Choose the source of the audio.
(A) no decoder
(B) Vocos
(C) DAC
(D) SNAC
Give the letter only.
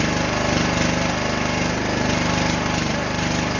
A